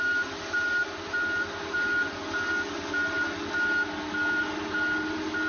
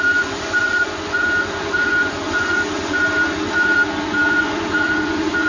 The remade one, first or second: second